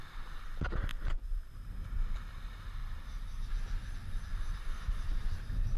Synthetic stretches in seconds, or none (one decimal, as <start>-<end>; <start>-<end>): 0.9-1.5; 2.8-3.5; 4.3-5.8